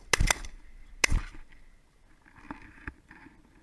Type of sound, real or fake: real